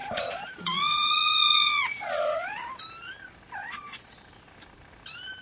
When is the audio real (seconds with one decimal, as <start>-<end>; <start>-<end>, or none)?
2.8-3.6; 4.1-5.4